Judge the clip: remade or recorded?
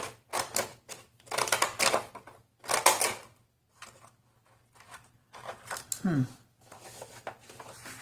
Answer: recorded